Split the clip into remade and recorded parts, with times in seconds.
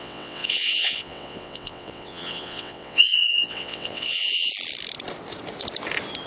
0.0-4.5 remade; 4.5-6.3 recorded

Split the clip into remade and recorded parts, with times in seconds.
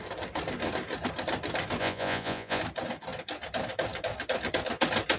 0.0-1.8 recorded; 1.8-2.6 remade; 2.6-5.2 recorded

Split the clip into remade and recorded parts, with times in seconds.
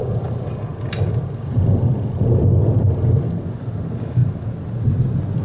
0.0-0.6 remade; 0.6-1.9 recorded; 1.9-2.4 remade; 2.4-5.4 recorded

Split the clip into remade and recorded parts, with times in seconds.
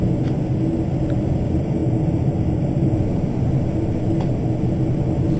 0.0-5.4 recorded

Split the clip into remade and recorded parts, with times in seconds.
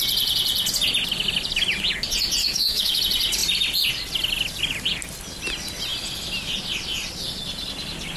0.0-2.4 recorded; 2.4-3.0 remade; 3.0-8.2 recorded